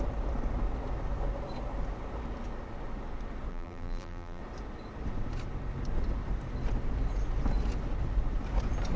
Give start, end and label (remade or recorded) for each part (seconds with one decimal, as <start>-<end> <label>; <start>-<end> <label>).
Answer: 0.0-3.5 recorded; 3.5-4.4 remade; 4.4-9.0 recorded